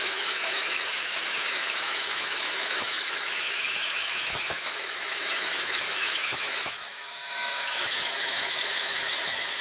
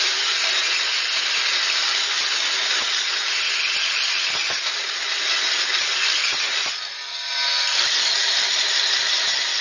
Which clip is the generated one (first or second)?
first